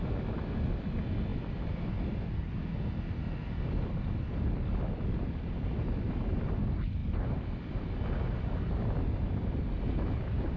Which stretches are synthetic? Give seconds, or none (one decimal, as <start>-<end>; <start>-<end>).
none